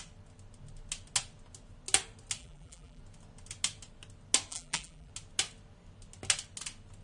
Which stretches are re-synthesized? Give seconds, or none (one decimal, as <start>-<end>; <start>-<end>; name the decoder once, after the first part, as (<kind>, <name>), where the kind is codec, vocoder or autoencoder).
2.4-3.0 (vocoder, BigVGAN v2); 4.5-5.1